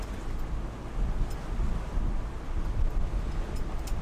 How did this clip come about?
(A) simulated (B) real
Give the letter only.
B